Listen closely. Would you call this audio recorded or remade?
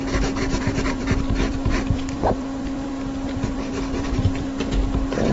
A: remade